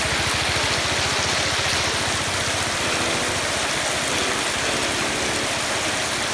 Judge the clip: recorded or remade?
recorded